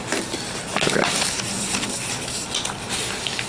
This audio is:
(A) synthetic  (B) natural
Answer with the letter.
B